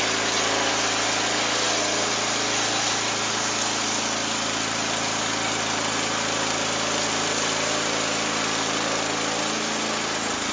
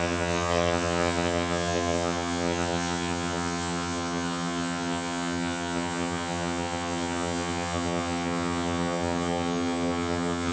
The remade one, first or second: second